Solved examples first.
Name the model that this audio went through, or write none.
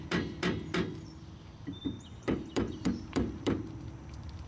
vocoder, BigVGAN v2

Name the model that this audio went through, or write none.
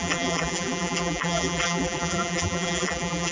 vocoder, BigVGAN v2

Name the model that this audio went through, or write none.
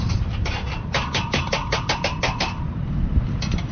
vocoder, BigVGAN v2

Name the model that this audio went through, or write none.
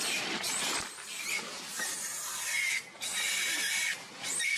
none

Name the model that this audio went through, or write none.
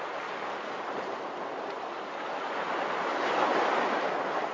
none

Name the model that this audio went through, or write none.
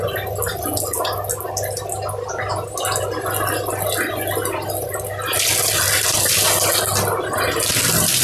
none